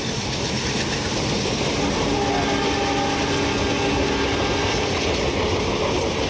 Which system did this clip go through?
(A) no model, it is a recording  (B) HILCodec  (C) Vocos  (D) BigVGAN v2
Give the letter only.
A